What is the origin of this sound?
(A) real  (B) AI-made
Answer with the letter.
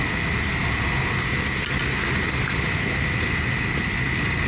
A